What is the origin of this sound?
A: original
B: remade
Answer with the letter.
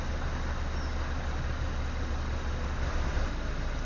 A